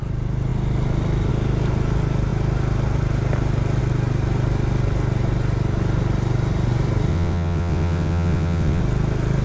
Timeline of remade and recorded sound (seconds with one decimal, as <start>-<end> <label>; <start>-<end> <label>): 0.0-7.1 recorded; 7.1-8.8 remade; 8.8-9.4 recorded